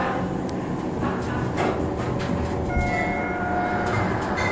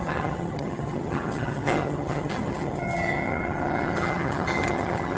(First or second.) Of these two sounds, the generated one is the second